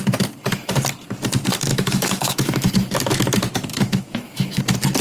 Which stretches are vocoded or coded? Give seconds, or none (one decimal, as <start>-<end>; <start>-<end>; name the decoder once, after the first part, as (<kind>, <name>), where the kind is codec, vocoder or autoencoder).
1.7-2.7 (autoencoder, DAC-VAE); 3.7-4.6

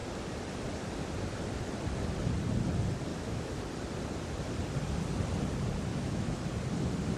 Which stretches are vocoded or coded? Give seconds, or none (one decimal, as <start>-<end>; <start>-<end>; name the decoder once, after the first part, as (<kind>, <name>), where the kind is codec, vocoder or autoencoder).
3.1-3.6 (autoencoder, DAC-VAE); 5.9-6.4